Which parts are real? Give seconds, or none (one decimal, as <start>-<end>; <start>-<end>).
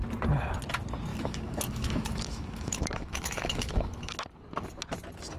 0.0-1.1; 4.2-5.4